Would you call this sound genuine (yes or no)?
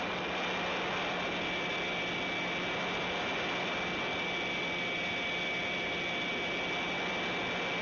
yes